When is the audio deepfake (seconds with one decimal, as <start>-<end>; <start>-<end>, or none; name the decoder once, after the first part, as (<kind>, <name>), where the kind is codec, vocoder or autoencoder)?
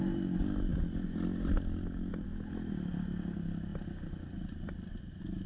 none